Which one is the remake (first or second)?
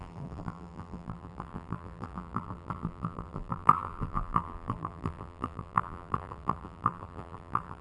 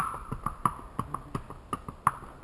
first